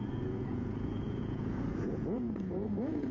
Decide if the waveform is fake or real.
fake